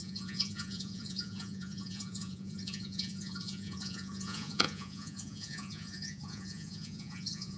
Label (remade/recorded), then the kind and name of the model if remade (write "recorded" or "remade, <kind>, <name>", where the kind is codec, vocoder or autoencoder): remade, vocoder, Vocos